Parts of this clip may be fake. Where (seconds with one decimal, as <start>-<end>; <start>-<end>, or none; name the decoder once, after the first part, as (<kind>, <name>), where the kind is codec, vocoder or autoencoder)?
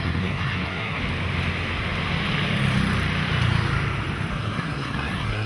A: 0.0-1.0 (codec, SNAC); 4.3-5.5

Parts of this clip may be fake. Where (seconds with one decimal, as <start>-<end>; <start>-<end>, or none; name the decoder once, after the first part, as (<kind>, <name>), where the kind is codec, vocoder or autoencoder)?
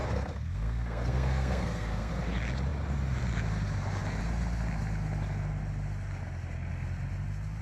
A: 0.0-2.1 (codec, SNAC)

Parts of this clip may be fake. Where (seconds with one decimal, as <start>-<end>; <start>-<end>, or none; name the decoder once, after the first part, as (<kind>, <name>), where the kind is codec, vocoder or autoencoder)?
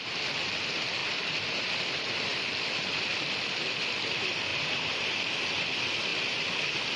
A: 1.0-1.7 (vocoder, BigVGAN v2); 4.5-5.2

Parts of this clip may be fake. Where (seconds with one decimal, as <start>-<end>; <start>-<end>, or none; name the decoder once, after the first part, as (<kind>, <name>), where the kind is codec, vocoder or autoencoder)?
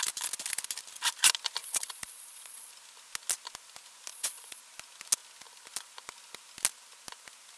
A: 1.6-2.7 (vocoder, Vocos); 4.1-4.6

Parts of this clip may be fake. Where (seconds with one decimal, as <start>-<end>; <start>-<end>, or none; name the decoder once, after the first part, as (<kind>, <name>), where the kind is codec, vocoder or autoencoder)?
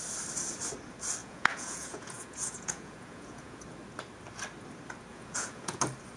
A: 1.2-3.6 (vocoder, Vocos); 5.1-5.8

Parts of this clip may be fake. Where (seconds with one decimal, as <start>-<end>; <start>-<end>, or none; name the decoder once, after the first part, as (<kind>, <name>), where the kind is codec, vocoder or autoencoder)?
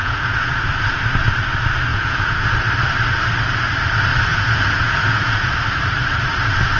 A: 0.0-0.7 (vocoder, Vocos); 1.9-2.5; 4.3-5.5